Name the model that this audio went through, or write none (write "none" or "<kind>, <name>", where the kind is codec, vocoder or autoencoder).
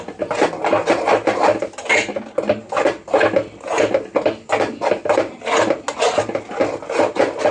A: none